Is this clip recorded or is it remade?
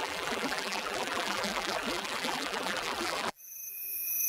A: remade